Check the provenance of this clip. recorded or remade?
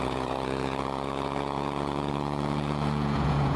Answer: remade